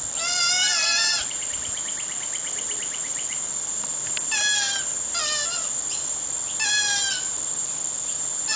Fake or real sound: real